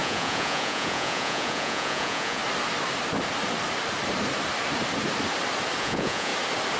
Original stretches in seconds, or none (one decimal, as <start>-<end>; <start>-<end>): 2.4-5.8; 6.3-6.8